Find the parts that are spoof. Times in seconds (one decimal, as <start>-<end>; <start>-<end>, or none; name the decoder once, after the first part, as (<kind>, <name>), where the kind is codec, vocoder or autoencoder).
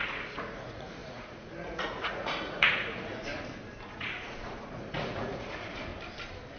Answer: 0.0-3.3 (vocoder, Vocos); 3.9-5.9